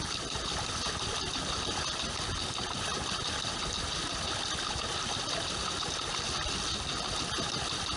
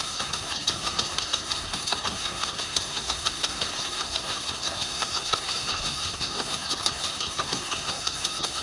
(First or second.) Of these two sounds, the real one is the first